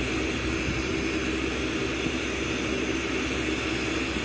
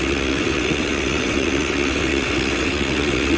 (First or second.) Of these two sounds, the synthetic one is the second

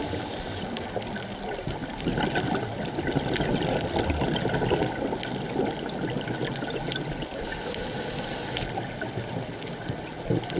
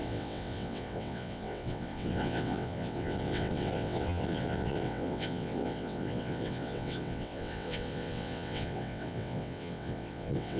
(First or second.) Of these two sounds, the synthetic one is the second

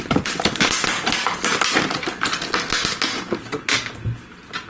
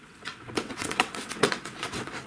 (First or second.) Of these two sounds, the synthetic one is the second